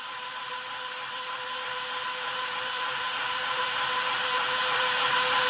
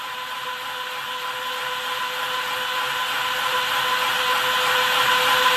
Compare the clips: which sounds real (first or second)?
second